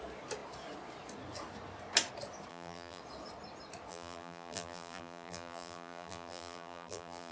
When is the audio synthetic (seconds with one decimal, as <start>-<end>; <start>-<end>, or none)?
2.5-3.0; 3.9-7.3